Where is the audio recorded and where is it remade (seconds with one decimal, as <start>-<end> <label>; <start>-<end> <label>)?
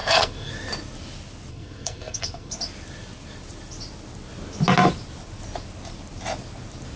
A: 0.0-0.5 remade; 0.5-1.5 recorded; 1.5-2.5 remade; 2.5-7.0 recorded